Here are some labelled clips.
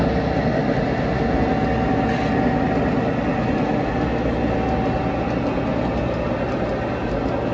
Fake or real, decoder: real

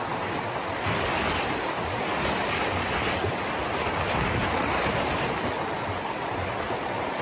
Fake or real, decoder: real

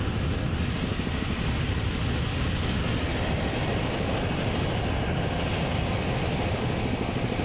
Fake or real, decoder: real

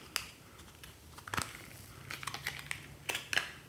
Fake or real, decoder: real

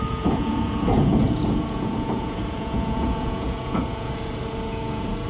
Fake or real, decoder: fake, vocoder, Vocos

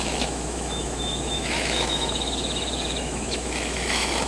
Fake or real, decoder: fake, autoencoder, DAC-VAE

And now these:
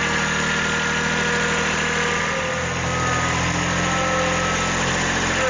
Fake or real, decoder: real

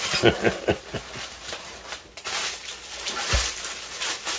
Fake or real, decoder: real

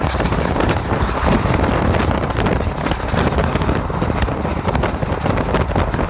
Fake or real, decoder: real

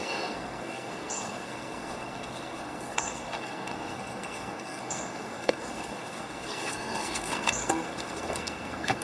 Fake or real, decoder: fake, codec, SNAC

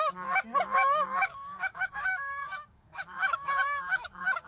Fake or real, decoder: fake, autoencoder, DAC-VAE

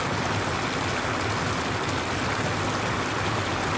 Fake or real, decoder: real